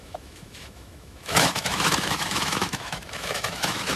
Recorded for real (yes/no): no